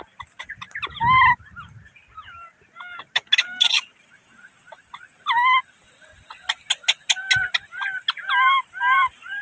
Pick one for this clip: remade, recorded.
recorded